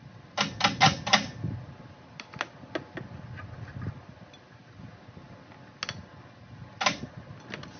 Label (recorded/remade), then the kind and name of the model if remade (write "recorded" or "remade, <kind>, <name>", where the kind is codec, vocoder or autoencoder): recorded